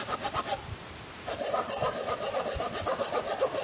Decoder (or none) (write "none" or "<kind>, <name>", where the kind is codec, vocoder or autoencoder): none